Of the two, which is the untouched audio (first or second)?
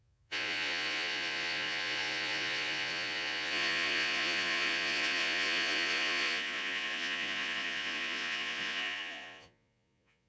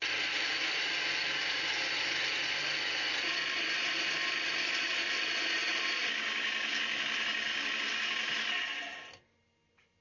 second